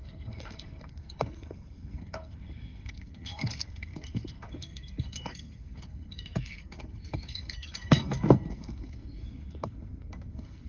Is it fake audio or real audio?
fake